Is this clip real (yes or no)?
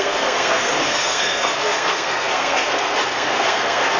no